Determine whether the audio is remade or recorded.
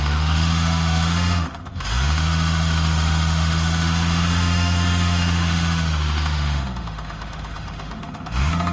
remade